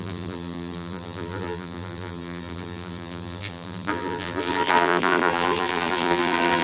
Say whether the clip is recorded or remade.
remade